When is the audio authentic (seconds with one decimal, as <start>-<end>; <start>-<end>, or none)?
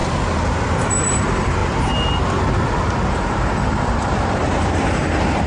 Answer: 0.0-0.9; 1.6-3.1